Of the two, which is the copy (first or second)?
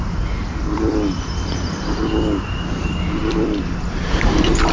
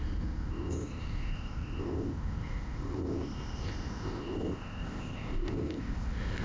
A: second